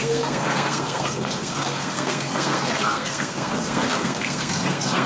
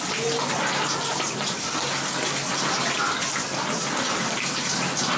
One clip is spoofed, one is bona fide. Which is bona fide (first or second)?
second